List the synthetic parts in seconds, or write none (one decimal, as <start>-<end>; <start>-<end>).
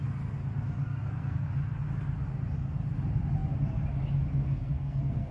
0.8-1.5; 4.3-5.3